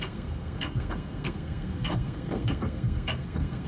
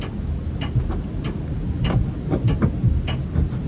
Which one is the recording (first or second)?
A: second